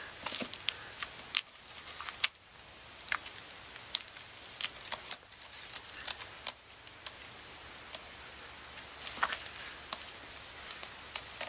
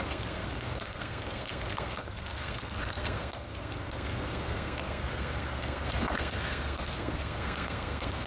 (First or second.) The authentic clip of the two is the first